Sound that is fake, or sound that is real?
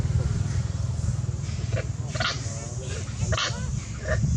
real